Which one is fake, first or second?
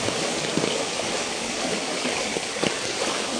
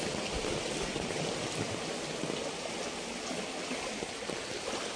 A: first